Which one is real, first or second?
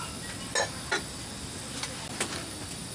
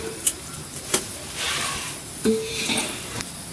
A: first